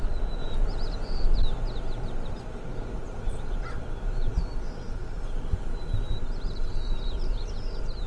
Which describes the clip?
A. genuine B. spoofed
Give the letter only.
A